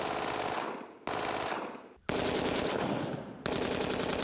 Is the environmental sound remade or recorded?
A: recorded